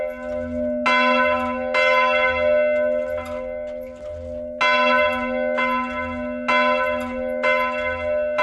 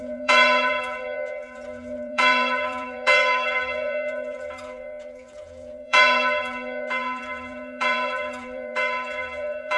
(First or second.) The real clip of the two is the first